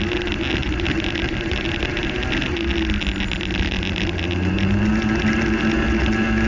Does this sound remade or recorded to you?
recorded